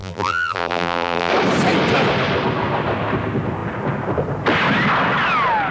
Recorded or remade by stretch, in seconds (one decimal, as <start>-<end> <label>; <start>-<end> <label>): 0.0-1.3 remade; 1.3-5.7 recorded